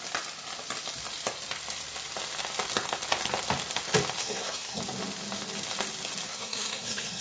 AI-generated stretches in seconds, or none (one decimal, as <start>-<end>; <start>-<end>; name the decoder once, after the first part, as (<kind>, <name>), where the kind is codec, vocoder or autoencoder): 4.2-4.8 (codec, SNAC); 6.3-7.2